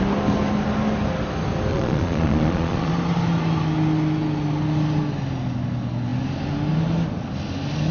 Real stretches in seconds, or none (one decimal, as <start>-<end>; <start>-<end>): 0.0-1.7; 2.9-7.9